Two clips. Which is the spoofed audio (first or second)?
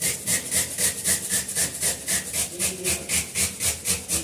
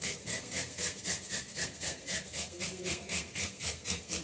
second